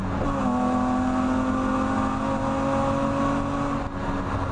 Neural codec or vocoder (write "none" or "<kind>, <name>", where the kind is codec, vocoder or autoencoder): none